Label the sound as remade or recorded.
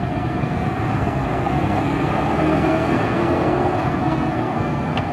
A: remade